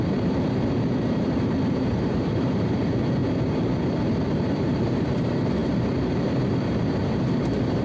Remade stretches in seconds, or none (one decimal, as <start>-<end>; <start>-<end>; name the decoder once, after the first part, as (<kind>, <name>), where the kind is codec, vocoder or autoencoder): 0.0-3.2 (vocoder, BigVGAN v2); 4.5-7.8